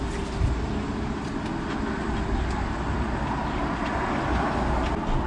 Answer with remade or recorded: recorded